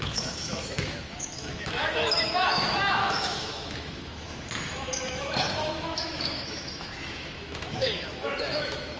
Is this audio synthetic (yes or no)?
yes